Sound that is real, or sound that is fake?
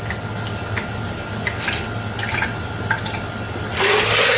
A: real